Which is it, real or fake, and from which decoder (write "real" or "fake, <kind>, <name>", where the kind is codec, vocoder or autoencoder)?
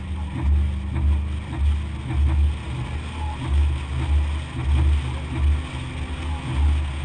real